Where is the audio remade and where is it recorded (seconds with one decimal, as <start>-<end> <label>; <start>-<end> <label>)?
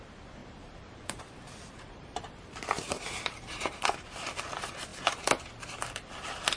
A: 0.0-0.4 recorded; 0.4-4.4 remade; 4.4-6.6 recorded